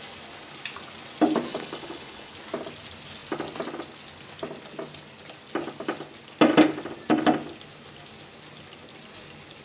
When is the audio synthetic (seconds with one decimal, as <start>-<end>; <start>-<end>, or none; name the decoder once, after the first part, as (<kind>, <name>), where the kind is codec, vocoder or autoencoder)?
1.5-2.3 (codec, HILCodec)